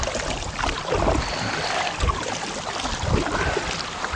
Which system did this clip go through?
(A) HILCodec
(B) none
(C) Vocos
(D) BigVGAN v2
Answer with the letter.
B